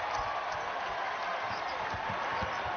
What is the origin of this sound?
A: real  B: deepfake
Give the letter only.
A